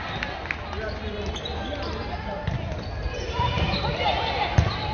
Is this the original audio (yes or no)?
yes